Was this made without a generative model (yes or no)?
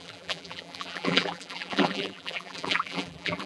no